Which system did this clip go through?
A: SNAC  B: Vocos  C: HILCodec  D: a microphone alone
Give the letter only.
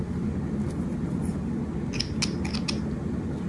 D